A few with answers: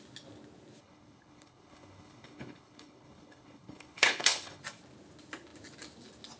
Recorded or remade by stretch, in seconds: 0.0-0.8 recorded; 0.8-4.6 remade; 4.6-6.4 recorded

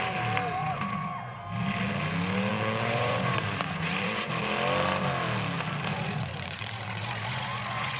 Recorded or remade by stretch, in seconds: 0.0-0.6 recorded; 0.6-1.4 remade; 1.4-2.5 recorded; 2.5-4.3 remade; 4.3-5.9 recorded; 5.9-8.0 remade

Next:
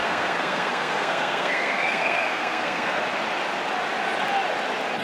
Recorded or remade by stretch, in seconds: 0.0-3.0 remade; 3.0-5.0 recorded

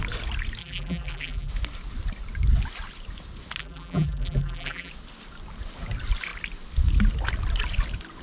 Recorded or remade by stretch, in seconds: 0.0-0.6 recorded; 0.6-1.5 remade; 1.5-3.6 recorded; 3.6-4.9 remade; 4.9-8.2 recorded

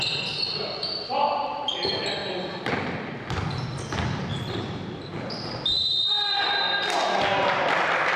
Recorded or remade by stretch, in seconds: 0.0-8.2 recorded

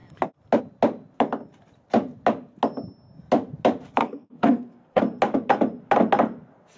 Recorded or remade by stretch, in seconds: 0.0-4.0 recorded; 4.0-5.0 remade; 5.0-6.8 recorded

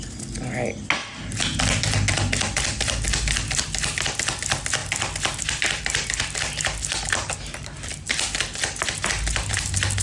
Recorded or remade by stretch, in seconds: 0.0-10.0 recorded

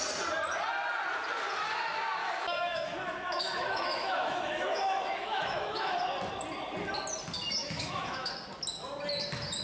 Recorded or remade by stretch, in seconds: 0.0-2.2 recorded; 2.2-6.0 remade; 6.0-7.6 recorded; 7.6-8.3 remade; 8.3-9.6 recorded